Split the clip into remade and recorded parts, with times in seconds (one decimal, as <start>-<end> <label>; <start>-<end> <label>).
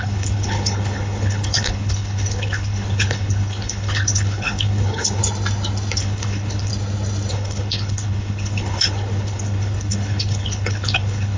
0.0-5.2 remade; 5.2-6.0 recorded; 6.0-6.7 remade; 6.7-7.3 recorded; 7.3-11.4 remade